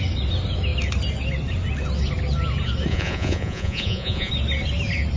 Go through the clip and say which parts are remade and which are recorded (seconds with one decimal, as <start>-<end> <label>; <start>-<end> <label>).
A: 0.0-2.9 recorded; 2.9-4.3 remade; 4.3-5.2 recorded